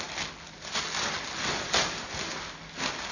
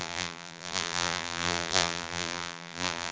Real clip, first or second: first